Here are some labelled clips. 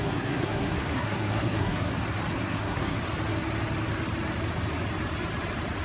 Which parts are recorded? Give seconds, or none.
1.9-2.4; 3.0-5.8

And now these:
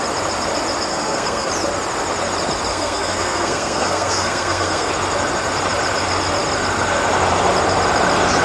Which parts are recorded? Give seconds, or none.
0.0-0.9; 1.5-2.7; 4.9-8.4

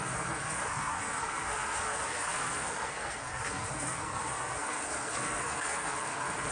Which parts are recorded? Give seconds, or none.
none